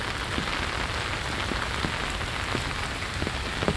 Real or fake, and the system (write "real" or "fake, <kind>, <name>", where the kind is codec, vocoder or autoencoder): real